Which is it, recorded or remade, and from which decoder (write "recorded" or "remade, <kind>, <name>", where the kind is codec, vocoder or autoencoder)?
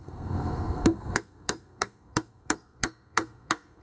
remade, codec, SNAC